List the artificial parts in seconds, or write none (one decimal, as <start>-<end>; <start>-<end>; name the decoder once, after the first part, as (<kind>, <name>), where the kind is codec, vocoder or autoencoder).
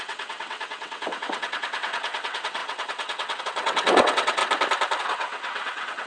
0.0-4.4 (vocoder, WaveNeXt); 5.0-6.1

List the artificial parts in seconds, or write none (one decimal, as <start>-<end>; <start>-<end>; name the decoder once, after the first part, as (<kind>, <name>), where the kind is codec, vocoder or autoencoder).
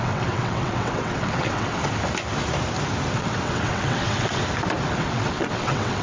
0.0-1.8 (vocoder, WaveNeXt); 3.1-4.4; 5.0-6.0